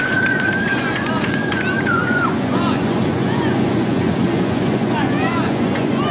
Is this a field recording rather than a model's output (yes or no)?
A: no